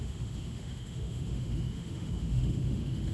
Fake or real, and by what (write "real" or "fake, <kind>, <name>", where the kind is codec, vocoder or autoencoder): fake, autoencoder, DAC-VAE